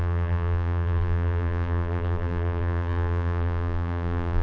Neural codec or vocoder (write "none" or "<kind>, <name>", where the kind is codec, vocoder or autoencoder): vocoder, BigVGAN v2